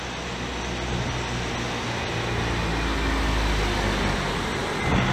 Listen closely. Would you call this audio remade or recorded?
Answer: recorded